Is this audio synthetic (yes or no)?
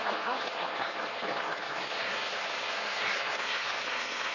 yes